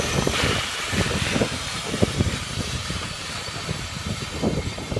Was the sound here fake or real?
fake